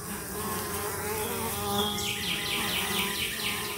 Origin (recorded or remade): recorded